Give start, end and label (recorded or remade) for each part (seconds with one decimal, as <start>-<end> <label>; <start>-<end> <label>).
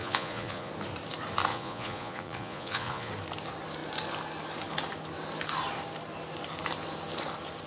0.0-0.7 remade; 0.7-1.5 recorded; 1.5-3.1 remade; 3.1-7.7 recorded